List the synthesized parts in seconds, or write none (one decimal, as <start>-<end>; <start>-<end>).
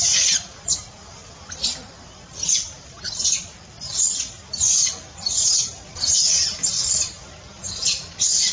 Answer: none